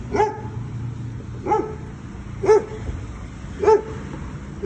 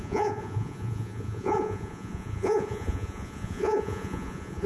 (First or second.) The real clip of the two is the first